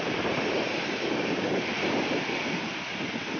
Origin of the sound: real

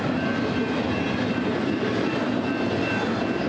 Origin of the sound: real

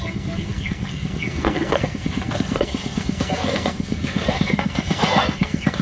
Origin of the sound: fake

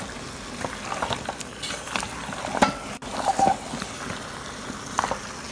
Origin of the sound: real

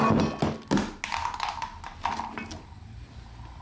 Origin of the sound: real